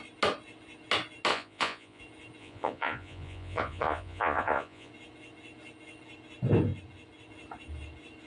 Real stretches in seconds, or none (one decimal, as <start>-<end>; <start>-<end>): 0.0-1.3; 2.0-2.4; 4.9-8.3